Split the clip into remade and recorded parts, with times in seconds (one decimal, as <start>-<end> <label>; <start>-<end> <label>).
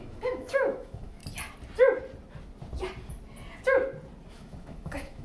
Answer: 0.0-1.2 remade; 1.2-4.3 recorded; 4.3-5.2 remade